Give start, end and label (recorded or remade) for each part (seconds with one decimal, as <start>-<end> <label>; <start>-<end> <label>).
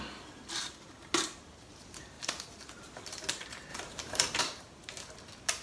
0.0-3.7 recorded; 3.7-4.4 remade; 4.4-5.6 recorded